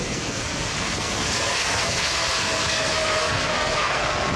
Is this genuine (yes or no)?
no